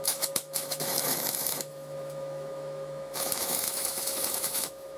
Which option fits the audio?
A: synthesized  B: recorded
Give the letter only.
A